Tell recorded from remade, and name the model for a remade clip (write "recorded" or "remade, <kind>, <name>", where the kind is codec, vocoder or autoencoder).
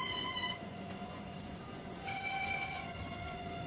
remade, vocoder, Vocos